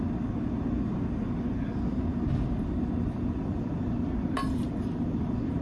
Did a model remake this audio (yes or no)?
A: no